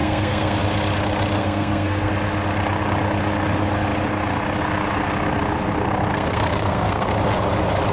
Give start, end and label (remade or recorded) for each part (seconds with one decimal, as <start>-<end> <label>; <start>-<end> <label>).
0.0-0.6 remade; 0.6-1.4 recorded; 1.4-2.1 remade; 2.1-6.1 recorded; 6.1-7.1 remade; 7.1-7.9 recorded